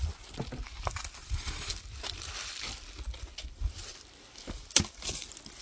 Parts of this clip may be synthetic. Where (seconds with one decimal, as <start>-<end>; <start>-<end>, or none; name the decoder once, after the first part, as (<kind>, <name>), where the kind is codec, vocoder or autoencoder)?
1.2-1.7 (vocoder, Vocos)